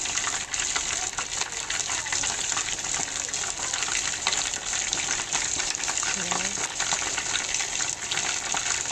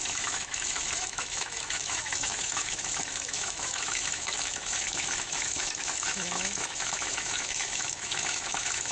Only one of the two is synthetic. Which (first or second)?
second